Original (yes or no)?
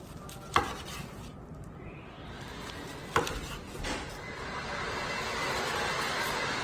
yes